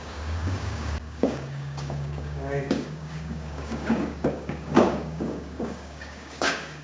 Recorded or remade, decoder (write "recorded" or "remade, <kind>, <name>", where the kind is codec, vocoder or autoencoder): remade, codec, DAC